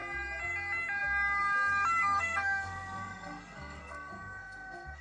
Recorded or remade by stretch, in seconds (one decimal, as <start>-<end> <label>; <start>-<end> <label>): 0.0-2.0 recorded; 2.0-5.0 remade